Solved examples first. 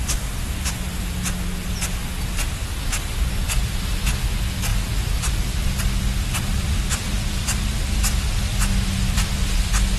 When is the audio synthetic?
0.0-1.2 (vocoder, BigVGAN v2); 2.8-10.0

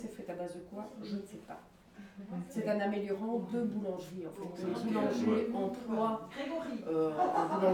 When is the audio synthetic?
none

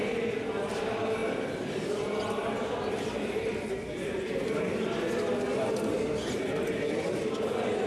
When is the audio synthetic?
none